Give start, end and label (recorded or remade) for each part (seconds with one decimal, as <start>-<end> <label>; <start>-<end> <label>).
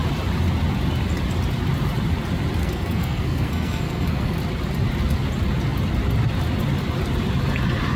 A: 0.0-2.6 recorded; 2.6-4.4 remade; 4.4-8.0 recorded